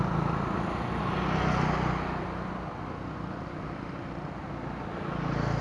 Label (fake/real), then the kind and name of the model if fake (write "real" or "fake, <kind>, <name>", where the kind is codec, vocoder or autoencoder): real